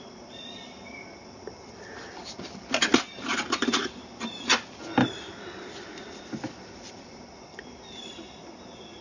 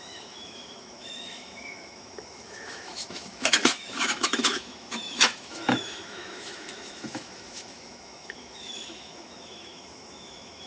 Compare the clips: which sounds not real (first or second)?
second